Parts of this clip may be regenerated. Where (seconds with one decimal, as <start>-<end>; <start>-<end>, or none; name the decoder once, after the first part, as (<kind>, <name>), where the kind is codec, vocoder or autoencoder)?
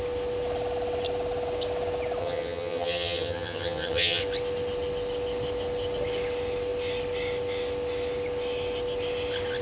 2.2-4.2 (vocoder, HiFi-GAN)